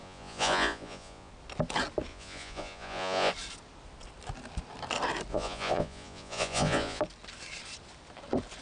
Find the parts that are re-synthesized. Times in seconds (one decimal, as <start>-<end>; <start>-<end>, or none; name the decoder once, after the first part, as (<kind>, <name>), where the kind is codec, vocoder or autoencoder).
0.0-1.3 (vocoder, Vocos); 2.1-3.3; 5.3-7.0